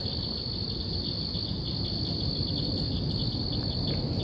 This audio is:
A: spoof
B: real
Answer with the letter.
B